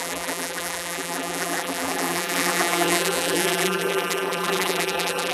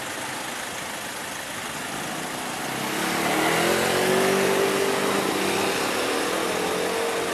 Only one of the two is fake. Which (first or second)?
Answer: first